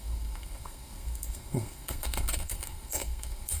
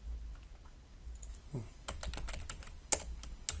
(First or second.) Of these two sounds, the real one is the second